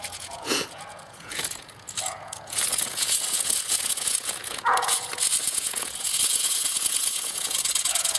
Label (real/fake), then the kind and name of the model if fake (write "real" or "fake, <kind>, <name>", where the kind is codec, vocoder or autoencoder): fake, vocoder, Vocos